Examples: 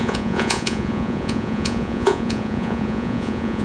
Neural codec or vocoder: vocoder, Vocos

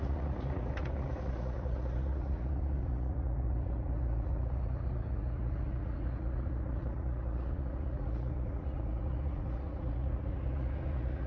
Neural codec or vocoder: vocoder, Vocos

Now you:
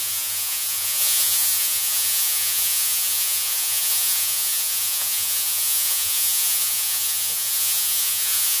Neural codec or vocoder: vocoder, Vocos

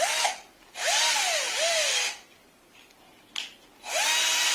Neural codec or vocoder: none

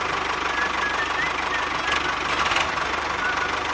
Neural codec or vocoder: none